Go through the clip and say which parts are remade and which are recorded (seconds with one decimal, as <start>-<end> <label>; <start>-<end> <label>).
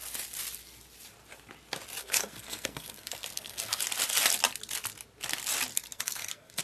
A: 0.0-2.0 recorded; 2.0-3.8 remade; 3.8-5.7 recorded; 5.7-6.6 remade